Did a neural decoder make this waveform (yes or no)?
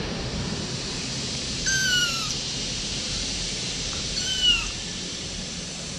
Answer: yes